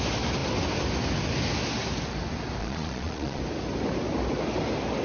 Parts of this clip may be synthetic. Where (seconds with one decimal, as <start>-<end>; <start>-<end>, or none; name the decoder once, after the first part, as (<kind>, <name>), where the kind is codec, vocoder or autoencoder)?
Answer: 2.6-3.4 (vocoder, Vocos)